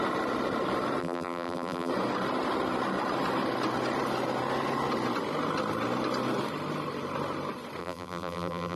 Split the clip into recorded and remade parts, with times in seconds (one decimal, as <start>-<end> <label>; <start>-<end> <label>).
0.0-1.0 recorded; 1.0-1.9 remade; 1.9-7.8 recorded; 7.8-8.8 remade